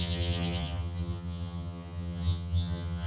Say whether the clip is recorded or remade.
remade